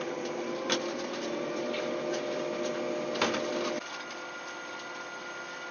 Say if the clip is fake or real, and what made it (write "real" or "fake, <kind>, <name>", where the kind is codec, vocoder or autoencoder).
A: real